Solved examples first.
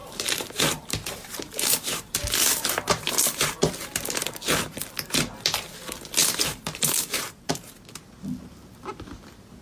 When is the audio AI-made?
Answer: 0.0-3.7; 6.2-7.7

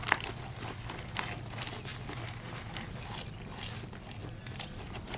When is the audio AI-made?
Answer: 4.2-5.2

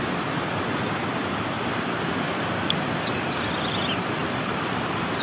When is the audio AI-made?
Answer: 4.2-5.2

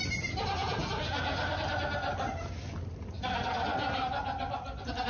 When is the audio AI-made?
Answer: none

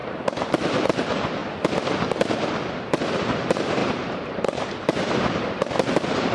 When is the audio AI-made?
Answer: 0.0-1.4; 2.7-6.3

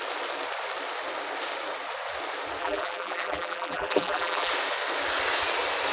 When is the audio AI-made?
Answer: 2.6-4.5

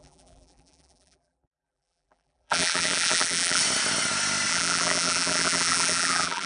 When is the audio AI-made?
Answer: 0.0-3.6; 4.5-6.5